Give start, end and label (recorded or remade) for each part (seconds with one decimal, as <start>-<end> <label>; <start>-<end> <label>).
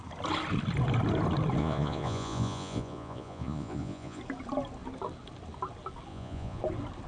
0.0-1.6 recorded; 1.6-4.2 remade; 4.2-6.1 recorded; 6.1-6.6 remade; 6.6-7.1 recorded